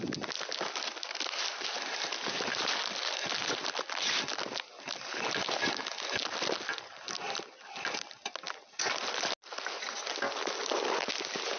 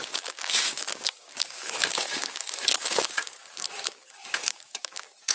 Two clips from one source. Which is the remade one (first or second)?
second